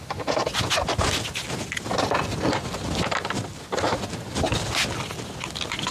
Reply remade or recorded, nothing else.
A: recorded